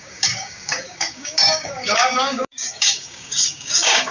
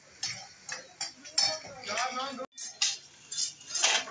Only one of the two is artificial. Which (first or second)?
first